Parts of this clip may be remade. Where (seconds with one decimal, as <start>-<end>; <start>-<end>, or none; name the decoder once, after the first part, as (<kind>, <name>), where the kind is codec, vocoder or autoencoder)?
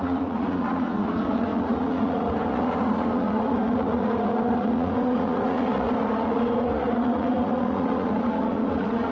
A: 0.0-9.1 (vocoder, Vocos)